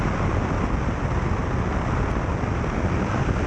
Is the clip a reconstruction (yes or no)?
no